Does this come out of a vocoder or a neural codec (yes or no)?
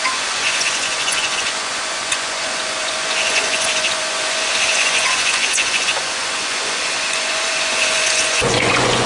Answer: yes